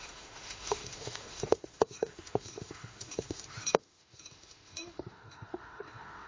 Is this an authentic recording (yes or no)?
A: no